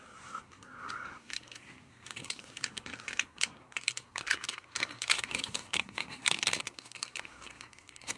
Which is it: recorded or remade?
remade